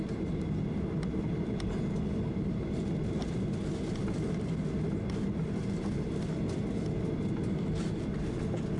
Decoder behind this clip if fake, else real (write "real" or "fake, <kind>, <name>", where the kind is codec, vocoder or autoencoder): real